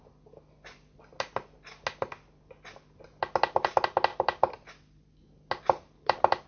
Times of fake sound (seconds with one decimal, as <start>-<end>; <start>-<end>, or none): none